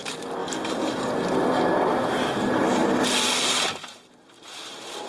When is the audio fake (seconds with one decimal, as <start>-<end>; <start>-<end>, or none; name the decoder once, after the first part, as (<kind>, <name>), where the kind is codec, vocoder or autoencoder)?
none

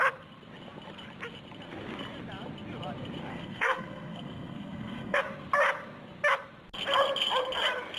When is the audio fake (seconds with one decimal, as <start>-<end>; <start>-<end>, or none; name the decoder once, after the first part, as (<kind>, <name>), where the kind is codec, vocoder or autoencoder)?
3.3-5.2 (codec, SNAC)

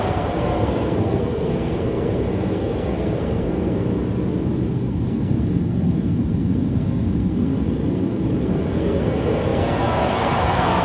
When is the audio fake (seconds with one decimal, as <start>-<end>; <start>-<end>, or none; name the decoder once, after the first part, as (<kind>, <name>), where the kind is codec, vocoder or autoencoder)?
0.0-4.0 (codec, SNAC); 4.7-10.8

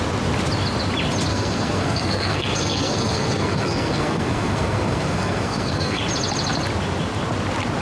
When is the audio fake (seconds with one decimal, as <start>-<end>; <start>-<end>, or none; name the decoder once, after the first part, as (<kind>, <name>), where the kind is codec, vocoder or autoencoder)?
1.3-6.0 (codec, SNAC)